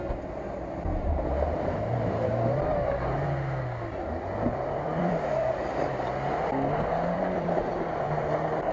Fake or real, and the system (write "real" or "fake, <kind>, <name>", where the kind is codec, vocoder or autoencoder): fake, vocoder, BigVGAN v2